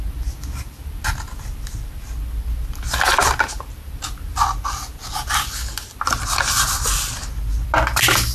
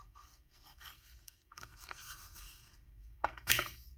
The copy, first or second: second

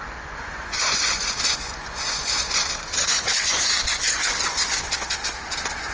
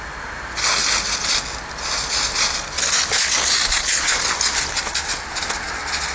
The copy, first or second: first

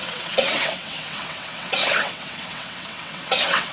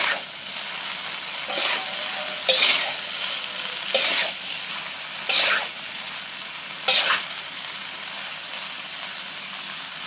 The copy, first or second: first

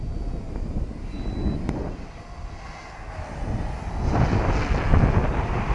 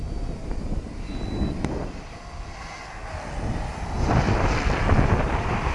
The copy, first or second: second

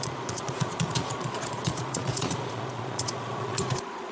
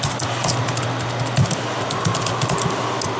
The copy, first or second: first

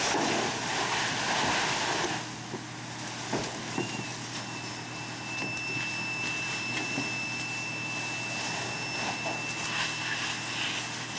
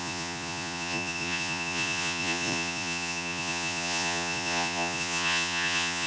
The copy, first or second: second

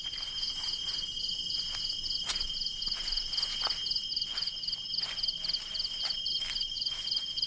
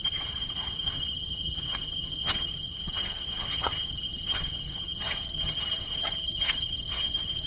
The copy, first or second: second